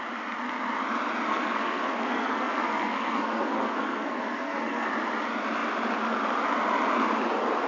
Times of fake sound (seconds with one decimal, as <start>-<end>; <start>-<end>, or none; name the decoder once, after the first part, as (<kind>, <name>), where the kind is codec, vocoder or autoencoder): 1.3-4.9 (codec, SNAC)